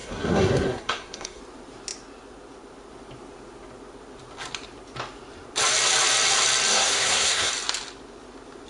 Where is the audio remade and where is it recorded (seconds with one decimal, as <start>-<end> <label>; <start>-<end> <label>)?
0.0-1.4 remade; 1.4-6.7 recorded; 6.7-7.5 remade; 7.5-8.7 recorded